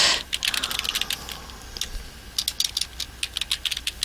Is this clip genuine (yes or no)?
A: yes